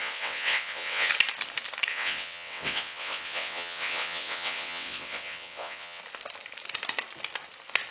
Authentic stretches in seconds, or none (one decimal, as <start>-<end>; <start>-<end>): 1.1-1.9; 6.0-7.9